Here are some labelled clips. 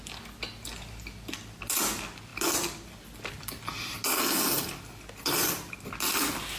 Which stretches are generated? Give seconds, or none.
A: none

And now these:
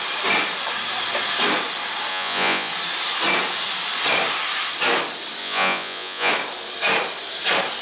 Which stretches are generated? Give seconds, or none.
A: 2.1-2.7 (vocoder, Vocos); 5.4-6.3